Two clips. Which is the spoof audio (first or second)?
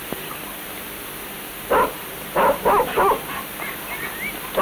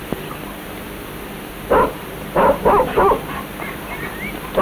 second